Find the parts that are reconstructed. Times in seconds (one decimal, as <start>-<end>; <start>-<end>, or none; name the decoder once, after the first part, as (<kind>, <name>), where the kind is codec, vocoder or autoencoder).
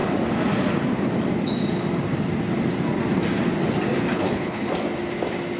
4.1-4.7 (codec, HILCodec)